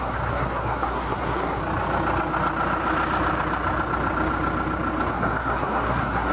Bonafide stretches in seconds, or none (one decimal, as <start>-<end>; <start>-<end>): 1.6-5.1